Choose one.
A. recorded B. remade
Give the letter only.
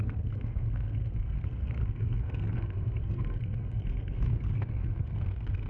B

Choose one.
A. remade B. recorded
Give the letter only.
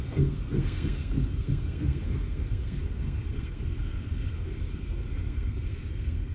A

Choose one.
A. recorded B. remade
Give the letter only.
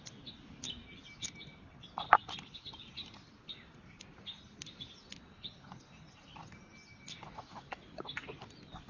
A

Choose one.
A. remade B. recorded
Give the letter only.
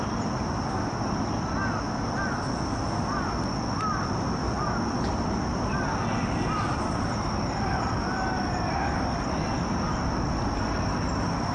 B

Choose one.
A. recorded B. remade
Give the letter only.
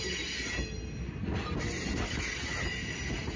A